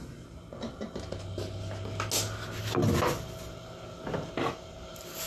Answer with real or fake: real